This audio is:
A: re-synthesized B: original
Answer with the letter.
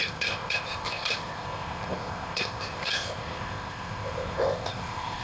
A